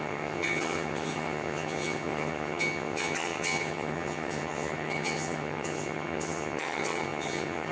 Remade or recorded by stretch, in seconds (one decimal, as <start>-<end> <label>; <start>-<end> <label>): 0.0-7.7 remade